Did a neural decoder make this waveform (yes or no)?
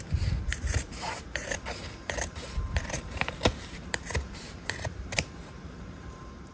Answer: yes